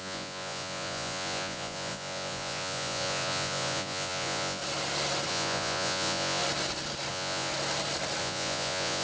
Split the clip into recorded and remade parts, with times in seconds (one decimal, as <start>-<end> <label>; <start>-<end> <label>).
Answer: 0.0-4.6 remade; 4.6-5.3 recorded; 5.3-6.4 remade; 6.4-7.1 recorded; 7.1-7.5 remade; 7.5-8.2 recorded; 8.2-9.0 remade